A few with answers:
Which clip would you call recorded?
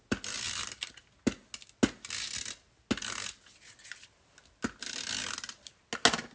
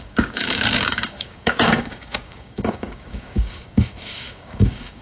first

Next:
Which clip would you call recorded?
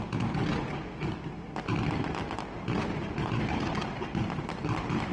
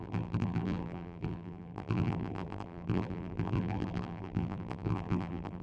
first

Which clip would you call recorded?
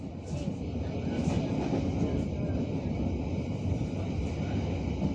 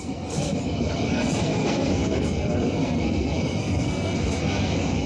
first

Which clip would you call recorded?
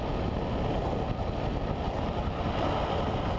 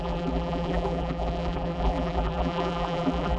first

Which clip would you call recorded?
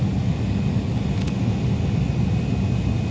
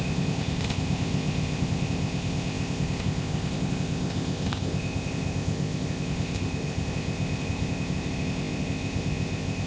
first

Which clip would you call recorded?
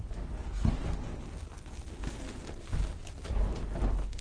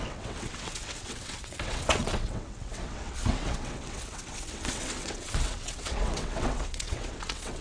first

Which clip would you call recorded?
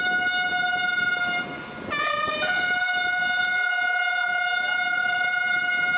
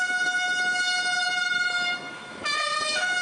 first